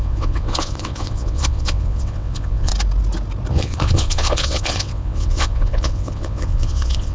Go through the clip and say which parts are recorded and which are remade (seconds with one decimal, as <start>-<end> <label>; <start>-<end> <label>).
0.0-2.7 remade; 2.7-3.5 recorded; 3.5-7.1 remade

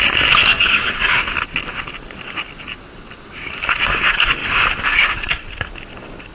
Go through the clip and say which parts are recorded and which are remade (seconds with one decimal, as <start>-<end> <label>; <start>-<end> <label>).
0.0-0.5 recorded; 0.5-1.4 remade; 1.4-6.3 recorded

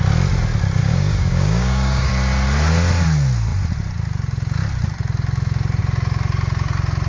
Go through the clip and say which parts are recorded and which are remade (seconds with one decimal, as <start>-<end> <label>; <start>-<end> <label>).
0.0-0.8 recorded; 0.8-2.1 remade; 2.1-7.1 recorded

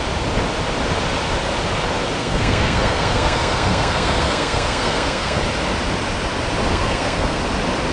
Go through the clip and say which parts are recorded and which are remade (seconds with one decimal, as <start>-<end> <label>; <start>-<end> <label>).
0.0-2.2 recorded; 2.2-5.4 remade; 5.4-6.7 recorded; 6.7-7.4 remade; 7.4-7.9 recorded

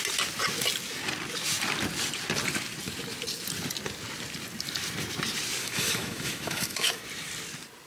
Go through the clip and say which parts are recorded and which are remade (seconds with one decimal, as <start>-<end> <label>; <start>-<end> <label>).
0.0-5.6 recorded; 5.6-7.0 remade; 7.0-7.9 recorded